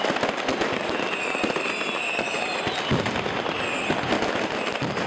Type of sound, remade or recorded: recorded